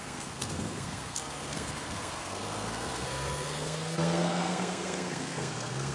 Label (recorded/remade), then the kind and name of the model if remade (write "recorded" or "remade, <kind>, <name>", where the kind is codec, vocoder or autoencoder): remade, codec, SNAC